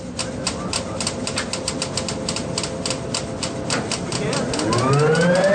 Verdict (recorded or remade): recorded